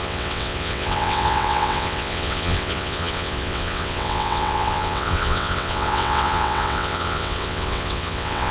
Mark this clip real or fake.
fake